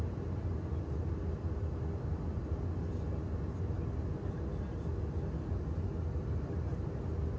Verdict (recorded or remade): recorded